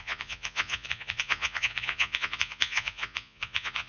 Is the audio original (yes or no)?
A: no